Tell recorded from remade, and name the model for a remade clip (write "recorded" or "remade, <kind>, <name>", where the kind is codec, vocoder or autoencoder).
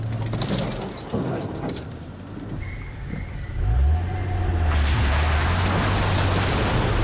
recorded